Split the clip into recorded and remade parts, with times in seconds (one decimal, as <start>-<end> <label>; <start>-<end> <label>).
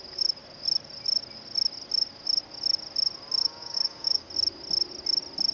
0.0-3.4 recorded; 3.4-4.3 remade; 4.3-5.5 recorded